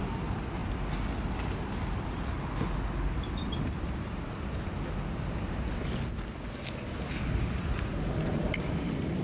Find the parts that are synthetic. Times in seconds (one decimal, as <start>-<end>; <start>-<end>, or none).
none